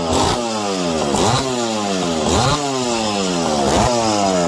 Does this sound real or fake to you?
real